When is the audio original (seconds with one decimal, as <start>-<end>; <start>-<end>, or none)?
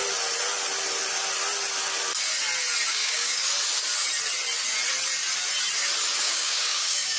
0.0-2.9; 3.4-6.2